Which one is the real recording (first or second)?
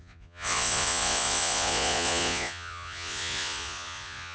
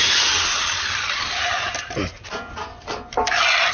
second